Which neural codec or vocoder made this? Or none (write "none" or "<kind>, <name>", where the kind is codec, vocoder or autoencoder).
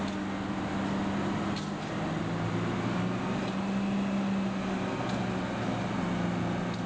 none